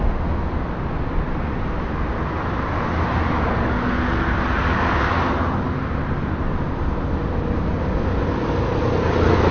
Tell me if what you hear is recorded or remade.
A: recorded